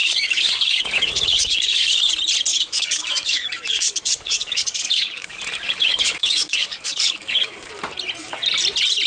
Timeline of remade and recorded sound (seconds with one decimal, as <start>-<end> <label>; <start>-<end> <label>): 0.0-2.1 remade; 2.1-2.5 recorded; 2.5-7.7 remade; 7.7-9.1 recorded